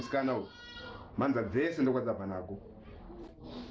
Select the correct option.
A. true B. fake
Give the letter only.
A